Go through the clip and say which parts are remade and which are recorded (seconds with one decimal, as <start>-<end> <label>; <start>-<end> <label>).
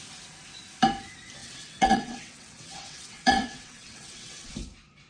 0.0-1.4 recorded; 1.4-4.5 remade; 4.5-5.1 recorded